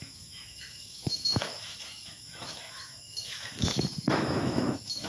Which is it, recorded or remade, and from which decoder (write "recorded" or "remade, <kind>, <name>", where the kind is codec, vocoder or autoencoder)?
remade, autoencoder, DAC-VAE